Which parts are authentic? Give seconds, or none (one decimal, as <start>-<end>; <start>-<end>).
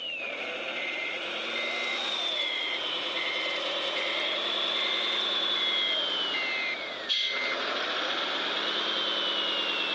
0.0-0.7; 1.4-1.9; 5.6-9.9